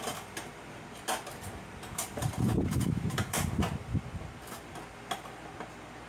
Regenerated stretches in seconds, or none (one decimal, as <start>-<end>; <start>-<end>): 1.3-3.6